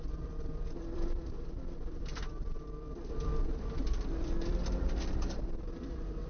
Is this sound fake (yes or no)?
yes